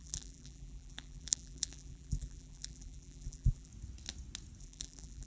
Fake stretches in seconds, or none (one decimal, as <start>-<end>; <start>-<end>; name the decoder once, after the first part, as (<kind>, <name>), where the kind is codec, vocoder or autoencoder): 0.0-3.7 (vocoder, BigVGAN v2); 4.6-5.3